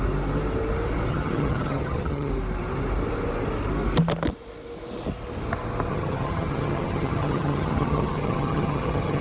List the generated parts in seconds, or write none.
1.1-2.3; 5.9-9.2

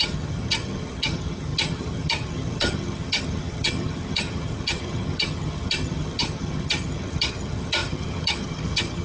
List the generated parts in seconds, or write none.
0.0-9.0

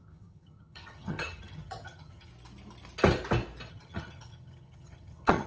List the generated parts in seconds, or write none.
0.0-2.3; 3.7-5.5

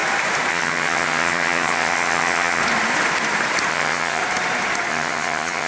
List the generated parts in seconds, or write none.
0.5-2.6; 3.7-4.2; 4.9-5.7

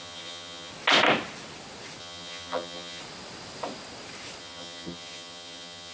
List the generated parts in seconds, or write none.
0.0-0.7; 2.0-3.0; 4.4-5.9